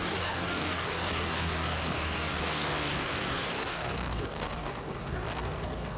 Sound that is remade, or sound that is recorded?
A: remade